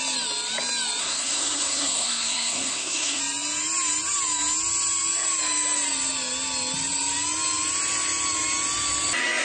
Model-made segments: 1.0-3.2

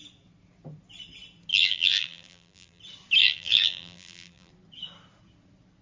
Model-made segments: 1.5-2.8; 3.2-4.5

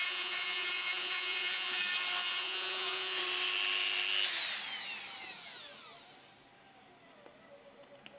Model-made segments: 0.0-1.8; 2.2-3.2

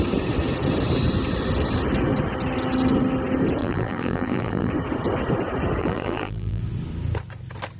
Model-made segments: 3.6-4.7; 5.8-6.6

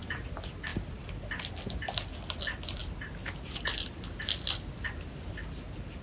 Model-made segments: none

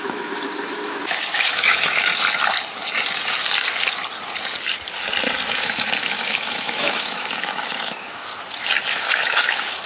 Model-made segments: 0.0-2.1; 5.5-8.3; 8.9-9.9

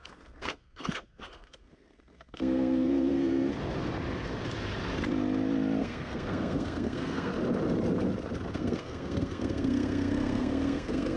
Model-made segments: 0.0-3.5; 5.8-7.3; 8.5-11.2

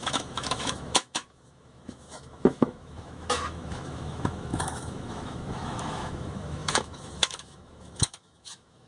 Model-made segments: 0.0-8.9